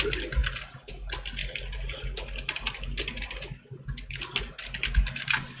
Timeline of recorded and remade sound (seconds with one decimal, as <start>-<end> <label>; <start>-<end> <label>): 0.0-5.6 recorded